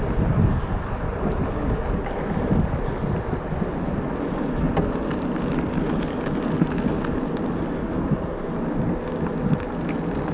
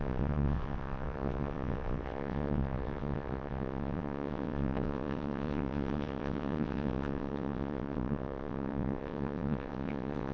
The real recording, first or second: first